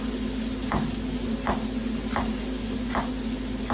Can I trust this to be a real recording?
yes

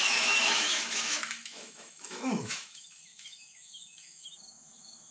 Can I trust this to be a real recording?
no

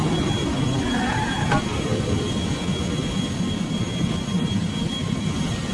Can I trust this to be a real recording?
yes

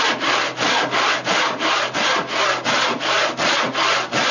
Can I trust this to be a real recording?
yes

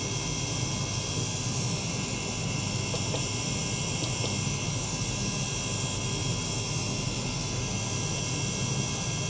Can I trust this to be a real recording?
no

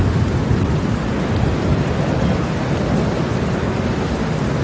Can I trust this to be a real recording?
yes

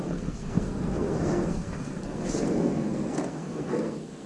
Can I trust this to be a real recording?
no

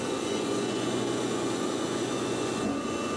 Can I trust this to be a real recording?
no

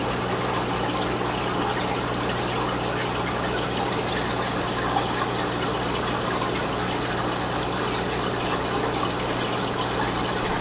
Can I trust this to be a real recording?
yes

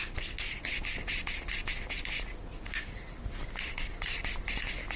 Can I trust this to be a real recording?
yes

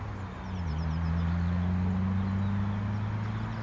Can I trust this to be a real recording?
yes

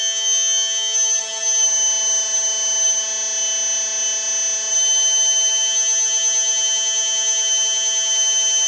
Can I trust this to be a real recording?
yes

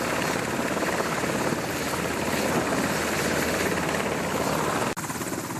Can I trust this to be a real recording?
yes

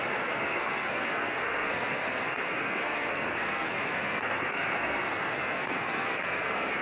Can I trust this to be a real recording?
no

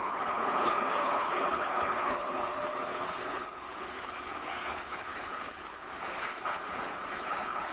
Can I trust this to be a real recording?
no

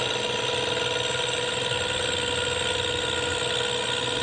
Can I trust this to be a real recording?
yes